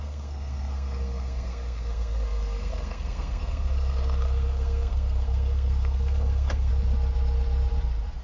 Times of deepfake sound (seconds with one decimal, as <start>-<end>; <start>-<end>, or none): 0.0-6.7